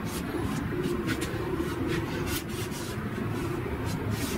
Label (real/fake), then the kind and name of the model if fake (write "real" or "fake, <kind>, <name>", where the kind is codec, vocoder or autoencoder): real